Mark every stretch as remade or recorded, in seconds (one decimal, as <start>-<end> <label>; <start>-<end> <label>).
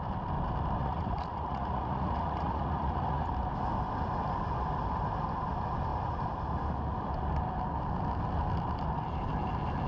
0.0-0.8 recorded; 0.8-3.3 remade; 3.3-9.9 recorded